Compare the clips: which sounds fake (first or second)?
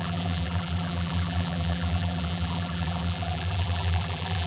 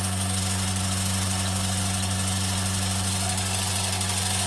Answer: first